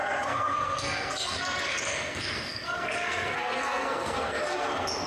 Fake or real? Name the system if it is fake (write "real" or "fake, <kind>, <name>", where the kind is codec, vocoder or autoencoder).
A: fake, codec, SNAC